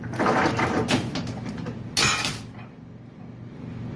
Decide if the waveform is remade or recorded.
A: recorded